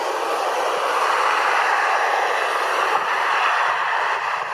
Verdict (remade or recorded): recorded